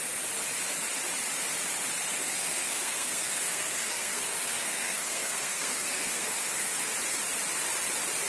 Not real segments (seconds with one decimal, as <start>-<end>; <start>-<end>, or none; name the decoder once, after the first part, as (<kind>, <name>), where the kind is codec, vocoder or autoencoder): 2.1-6.9 (codec, SNAC)